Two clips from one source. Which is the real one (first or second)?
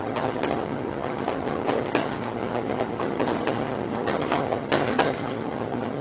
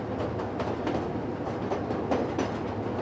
second